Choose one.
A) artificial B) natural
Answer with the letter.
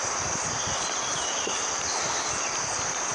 B